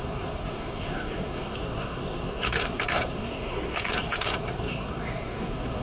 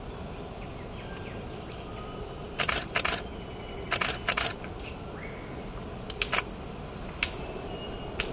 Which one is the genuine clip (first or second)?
second